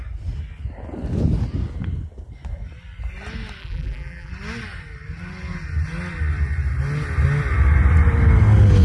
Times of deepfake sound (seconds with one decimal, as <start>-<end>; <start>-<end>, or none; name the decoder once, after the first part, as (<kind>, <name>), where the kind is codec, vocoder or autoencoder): 3.6-4.3 (vocoder, BigVGAN v2)

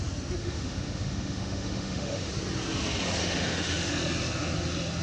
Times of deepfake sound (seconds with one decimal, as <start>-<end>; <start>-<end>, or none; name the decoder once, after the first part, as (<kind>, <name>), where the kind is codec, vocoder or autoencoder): 0.4-2.3 (autoencoder, DAC-VAE); 3.2-3.9

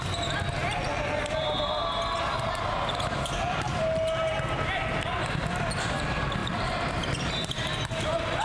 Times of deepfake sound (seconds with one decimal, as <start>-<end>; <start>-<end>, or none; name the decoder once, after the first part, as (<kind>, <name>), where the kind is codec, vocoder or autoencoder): 6.4-7.3 (vocoder, BigVGAN v2)

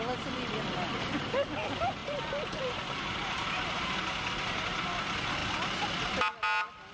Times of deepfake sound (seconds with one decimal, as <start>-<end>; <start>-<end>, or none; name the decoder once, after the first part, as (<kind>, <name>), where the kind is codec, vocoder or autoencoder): none

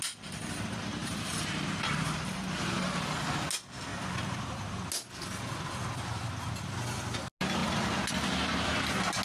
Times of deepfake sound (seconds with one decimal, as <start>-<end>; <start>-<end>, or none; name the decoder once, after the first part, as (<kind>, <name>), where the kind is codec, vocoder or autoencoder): 1.0-3.0 (vocoder, BigVGAN v2); 3.9-4.9

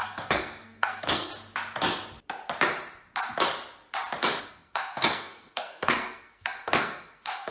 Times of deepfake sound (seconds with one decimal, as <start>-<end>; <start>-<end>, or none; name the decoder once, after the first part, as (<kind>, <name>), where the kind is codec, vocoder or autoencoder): 0.0-1.3 (codec, SNAC); 4.4-7.5